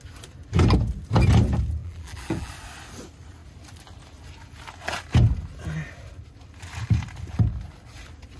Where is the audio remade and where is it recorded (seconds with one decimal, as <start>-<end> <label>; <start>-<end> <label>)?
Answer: 0.0-1.8 recorded; 1.8-2.5 remade; 2.5-8.4 recorded